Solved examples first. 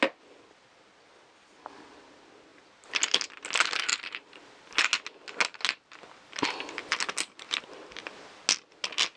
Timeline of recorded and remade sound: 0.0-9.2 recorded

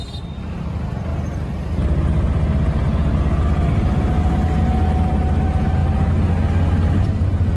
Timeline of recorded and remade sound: 0.0-7.6 recorded

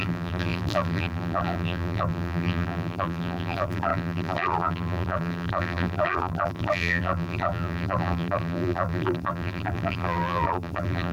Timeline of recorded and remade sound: 0.0-11.1 remade

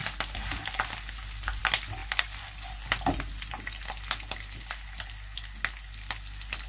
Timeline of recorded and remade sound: 0.0-6.7 recorded

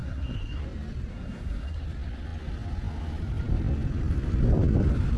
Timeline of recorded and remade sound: 0.0-0.6 remade; 0.6-1.1 recorded; 1.1-1.8 remade; 1.8-5.2 recorded